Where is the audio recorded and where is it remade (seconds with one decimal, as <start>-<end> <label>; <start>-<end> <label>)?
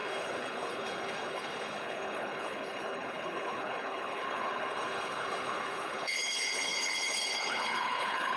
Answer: 0.0-8.4 remade